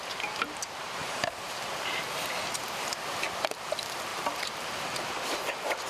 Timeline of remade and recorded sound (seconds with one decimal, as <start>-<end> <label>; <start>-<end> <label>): 0.0-1.0 recorded; 1.0-2.5 remade; 2.5-4.1 recorded; 4.1-5.4 remade; 5.4-5.9 recorded